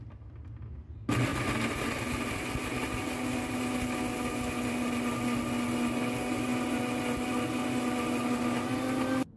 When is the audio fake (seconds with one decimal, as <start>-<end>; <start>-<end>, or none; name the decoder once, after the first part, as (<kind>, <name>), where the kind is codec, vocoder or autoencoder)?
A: none